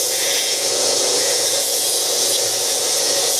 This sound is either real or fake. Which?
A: fake